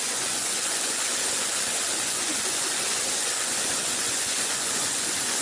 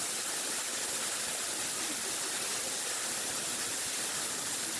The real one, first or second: second